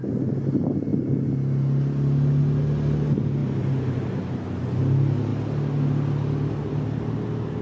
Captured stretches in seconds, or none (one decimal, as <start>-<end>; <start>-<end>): 0.0-3.4; 4.8-7.6